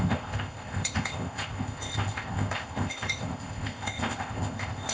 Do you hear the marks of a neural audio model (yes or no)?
yes